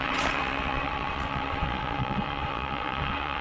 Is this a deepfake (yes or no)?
yes